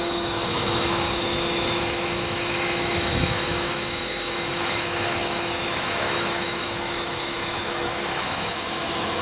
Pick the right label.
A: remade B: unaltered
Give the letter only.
A